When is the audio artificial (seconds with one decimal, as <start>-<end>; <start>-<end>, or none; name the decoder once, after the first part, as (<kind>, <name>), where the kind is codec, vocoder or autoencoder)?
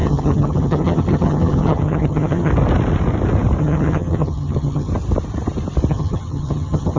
0.0-2.5 (vocoder, HiFi-GAN); 3.6-4.9; 5.9-7.0